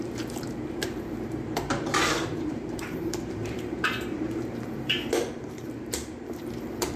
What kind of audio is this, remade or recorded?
remade